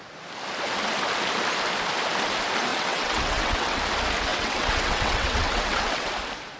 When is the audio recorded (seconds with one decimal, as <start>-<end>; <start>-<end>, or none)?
0.0-2.7; 3.8-4.3; 6.1-6.6